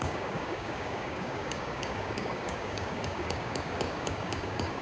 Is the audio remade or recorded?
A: remade